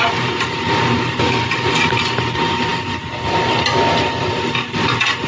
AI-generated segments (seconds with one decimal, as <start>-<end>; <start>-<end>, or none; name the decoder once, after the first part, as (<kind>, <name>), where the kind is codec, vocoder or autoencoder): none